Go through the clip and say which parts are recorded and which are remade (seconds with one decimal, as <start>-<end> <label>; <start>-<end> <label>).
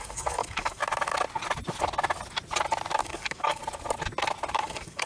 0.0-0.8 remade; 0.8-3.0 recorded; 3.0-3.6 remade; 3.6-4.6 recorded; 4.6-5.1 remade